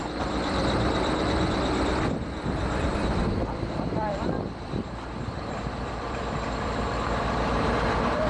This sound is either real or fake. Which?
fake